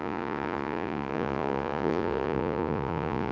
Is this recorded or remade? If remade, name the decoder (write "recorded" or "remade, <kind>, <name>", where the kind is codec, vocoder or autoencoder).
remade, vocoder, Vocos